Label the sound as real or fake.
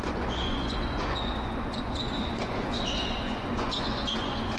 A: fake